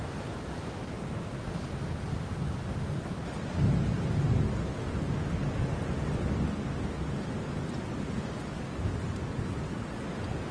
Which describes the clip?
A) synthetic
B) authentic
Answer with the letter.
B